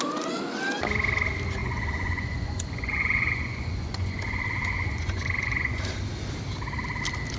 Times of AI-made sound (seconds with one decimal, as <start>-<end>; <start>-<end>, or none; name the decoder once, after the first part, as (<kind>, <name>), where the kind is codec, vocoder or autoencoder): 1.6-5.8 (vocoder, Vocos)